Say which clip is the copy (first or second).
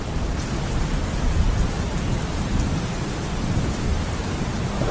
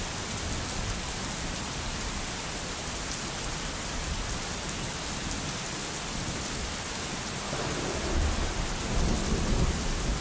first